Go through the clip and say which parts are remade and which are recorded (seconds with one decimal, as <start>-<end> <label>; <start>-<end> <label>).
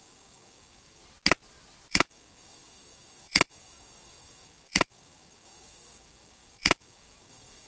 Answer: 0.0-1.0 remade; 1.0-1.9 recorded; 1.9-7.7 remade